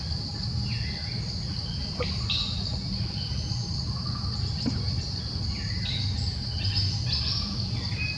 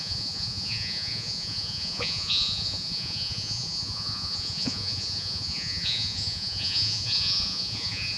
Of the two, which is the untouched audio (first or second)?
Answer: first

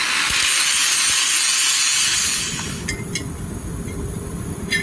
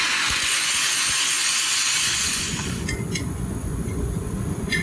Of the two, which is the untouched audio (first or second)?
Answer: first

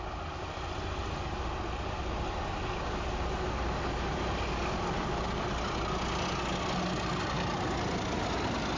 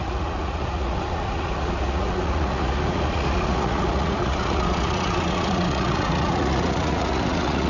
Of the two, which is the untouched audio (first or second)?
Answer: first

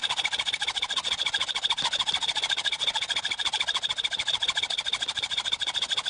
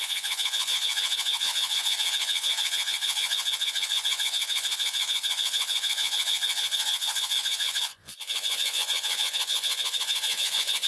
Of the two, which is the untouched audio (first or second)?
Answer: first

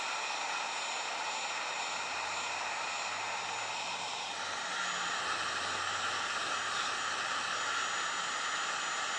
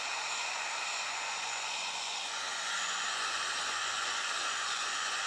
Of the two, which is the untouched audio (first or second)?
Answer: first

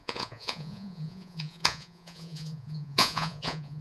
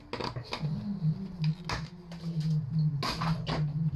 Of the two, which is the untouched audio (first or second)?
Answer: second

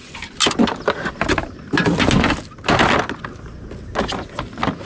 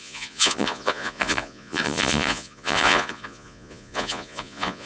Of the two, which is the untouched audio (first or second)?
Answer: first